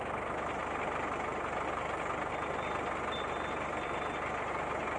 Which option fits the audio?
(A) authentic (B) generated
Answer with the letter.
A